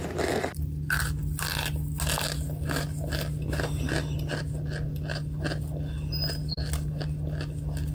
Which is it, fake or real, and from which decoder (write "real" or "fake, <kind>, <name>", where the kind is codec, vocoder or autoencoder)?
real